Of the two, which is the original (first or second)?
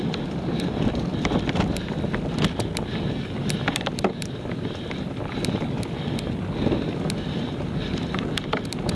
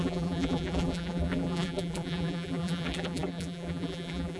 first